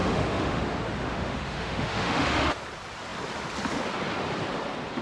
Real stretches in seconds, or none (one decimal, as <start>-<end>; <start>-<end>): 0.6-1.0; 2.6-5.0